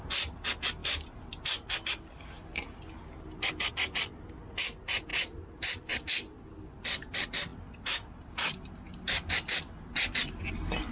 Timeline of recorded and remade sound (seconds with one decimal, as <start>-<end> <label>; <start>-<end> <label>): 0.0-0.8 recorded; 0.8-3.7 remade; 3.7-5.1 recorded; 5.1-7.1 remade; 7.1-7.5 recorded; 7.5-10.5 remade; 10.5-10.9 recorded